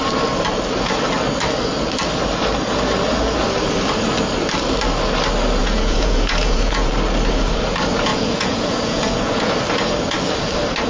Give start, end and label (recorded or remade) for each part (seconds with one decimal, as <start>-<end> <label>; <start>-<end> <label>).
0.0-5.6 recorded; 5.6-6.9 remade; 6.9-8.1 recorded; 8.1-9.5 remade; 9.5-10.9 recorded